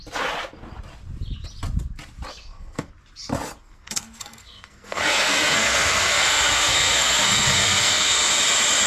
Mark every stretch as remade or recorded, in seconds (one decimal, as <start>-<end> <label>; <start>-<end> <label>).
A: 0.0-2.3 recorded; 2.3-2.9 remade; 2.9-3.6 recorded; 3.6-8.3 remade; 8.3-8.9 recorded